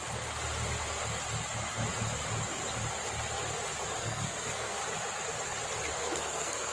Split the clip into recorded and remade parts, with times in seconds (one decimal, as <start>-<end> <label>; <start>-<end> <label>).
0.0-4.0 recorded; 4.0-4.8 remade; 4.8-6.0 recorded; 6.0-6.7 remade